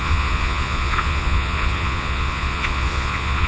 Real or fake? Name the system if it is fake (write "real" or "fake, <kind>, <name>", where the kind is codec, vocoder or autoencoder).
fake, vocoder, Vocos